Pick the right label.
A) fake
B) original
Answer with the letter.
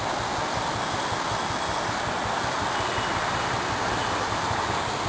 B